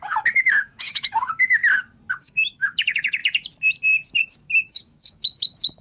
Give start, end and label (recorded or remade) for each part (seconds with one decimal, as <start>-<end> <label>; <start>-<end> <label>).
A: 0.0-1.6 remade; 1.6-2.2 recorded; 2.2-3.2 remade; 3.2-4.2 recorded; 4.2-5.8 remade